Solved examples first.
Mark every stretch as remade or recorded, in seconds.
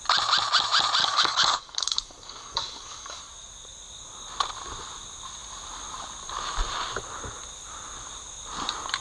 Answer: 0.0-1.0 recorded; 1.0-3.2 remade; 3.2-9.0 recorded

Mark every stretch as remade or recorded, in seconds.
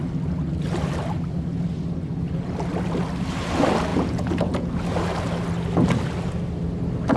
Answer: 0.0-3.9 recorded; 3.9-4.7 remade; 4.7-7.2 recorded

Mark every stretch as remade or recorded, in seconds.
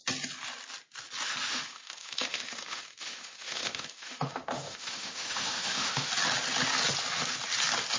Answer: 0.0-1.5 recorded; 1.5-6.1 remade; 6.1-8.0 recorded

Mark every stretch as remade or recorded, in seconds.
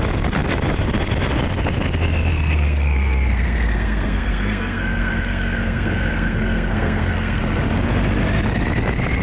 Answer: 0.0-2.3 recorded; 2.3-7.4 remade; 7.4-9.2 recorded